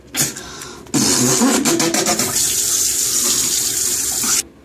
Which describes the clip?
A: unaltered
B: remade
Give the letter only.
A